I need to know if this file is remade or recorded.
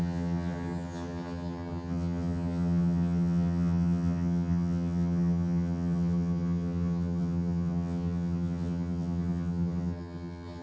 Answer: remade